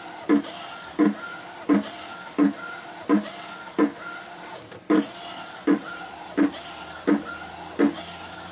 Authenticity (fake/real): real